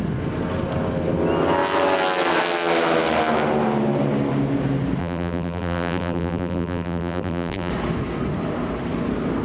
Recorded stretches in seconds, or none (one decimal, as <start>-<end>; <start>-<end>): 0.0-5.0; 7.7-9.4